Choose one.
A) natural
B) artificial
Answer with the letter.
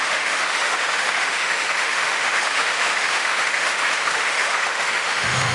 B